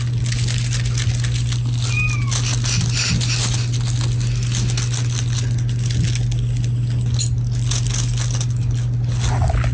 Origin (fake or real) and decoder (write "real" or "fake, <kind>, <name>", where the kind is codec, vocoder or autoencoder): real